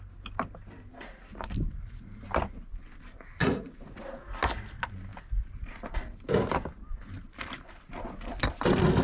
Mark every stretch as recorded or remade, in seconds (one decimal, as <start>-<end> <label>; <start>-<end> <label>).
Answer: 0.0-3.4 recorded; 3.4-4.3 remade; 4.3-9.0 recorded